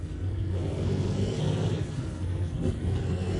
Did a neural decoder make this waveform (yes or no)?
yes